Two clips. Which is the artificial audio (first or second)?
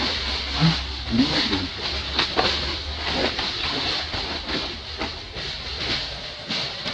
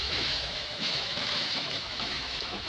second